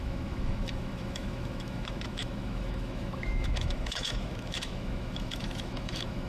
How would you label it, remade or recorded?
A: remade